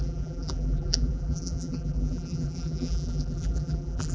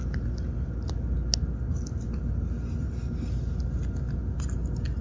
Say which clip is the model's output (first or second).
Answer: first